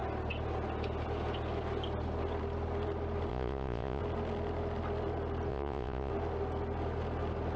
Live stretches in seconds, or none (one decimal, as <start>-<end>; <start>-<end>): 0.0-3.3; 4.0-5.5; 6.1-7.6